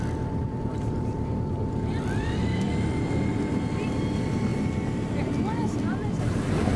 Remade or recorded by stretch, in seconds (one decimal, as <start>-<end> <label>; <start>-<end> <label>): 0.0-4.5 remade; 4.5-5.1 recorded; 5.1-6.8 remade